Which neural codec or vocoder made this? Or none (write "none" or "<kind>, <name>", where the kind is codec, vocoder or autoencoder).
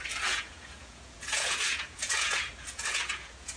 vocoder, Vocos